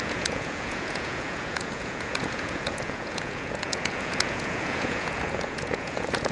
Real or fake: fake